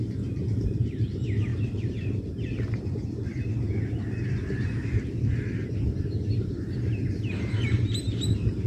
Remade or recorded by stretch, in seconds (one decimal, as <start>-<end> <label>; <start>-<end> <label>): 0.0-1.5 remade; 1.5-2.8 recorded; 2.8-3.3 remade; 3.3-7.3 recorded; 7.3-8.7 remade